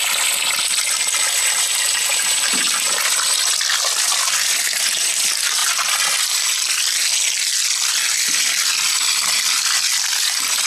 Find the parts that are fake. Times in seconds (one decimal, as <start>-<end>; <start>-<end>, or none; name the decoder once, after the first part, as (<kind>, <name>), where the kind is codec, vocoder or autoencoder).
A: none